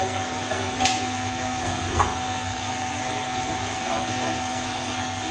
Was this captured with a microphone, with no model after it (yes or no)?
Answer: no